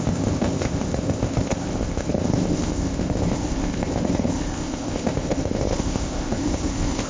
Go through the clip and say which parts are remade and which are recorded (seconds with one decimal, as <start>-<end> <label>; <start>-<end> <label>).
0.0-7.1 remade